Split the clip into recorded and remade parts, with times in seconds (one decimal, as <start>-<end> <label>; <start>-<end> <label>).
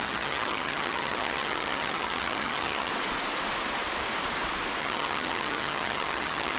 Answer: 0.0-2.9 remade; 2.9-4.8 recorded; 4.8-6.6 remade